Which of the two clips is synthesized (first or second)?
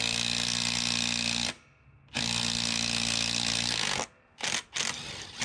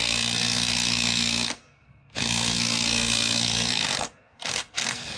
second